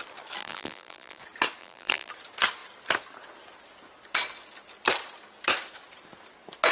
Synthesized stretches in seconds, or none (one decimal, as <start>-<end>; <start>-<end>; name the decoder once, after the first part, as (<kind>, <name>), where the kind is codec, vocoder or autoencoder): 0.4-1.2 (vocoder, BigVGAN v2); 1.6-2.1